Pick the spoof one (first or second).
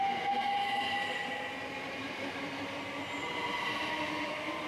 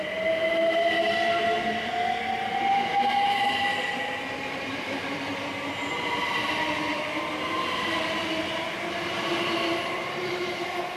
second